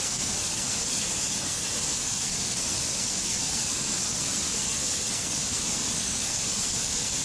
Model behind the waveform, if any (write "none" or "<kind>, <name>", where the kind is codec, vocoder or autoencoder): codec, SNAC